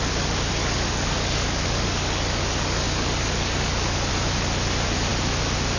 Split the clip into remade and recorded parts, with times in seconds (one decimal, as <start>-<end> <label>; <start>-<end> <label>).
0.0-0.6 recorded; 0.6-4.1 remade; 4.1-5.8 recorded